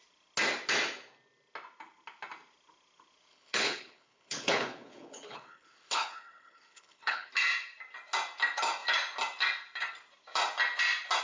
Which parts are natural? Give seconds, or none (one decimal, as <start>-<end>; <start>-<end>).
0.0-3.3; 7.3-11.2